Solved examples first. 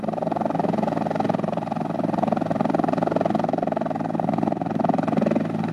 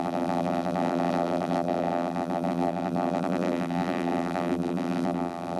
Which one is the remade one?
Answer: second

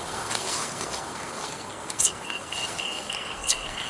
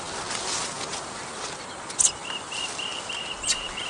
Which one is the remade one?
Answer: first